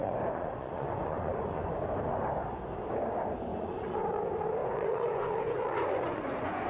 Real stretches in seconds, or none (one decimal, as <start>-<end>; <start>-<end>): 1.7-3.5; 4.1-4.6